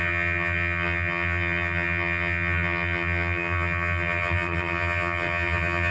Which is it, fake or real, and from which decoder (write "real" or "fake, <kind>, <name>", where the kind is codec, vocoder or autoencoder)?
fake, vocoder, HiFi-GAN